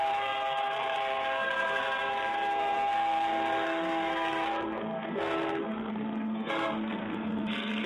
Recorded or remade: remade